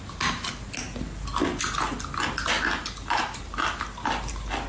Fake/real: real